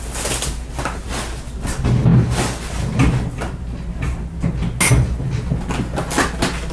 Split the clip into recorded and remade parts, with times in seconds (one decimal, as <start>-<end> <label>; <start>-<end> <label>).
0.0-6.7 recorded